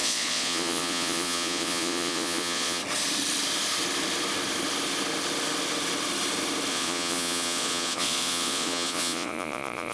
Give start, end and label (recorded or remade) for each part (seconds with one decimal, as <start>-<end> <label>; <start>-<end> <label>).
0.0-2.8 remade; 2.8-6.7 recorded; 6.7-9.9 remade